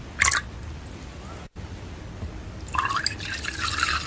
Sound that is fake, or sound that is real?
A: real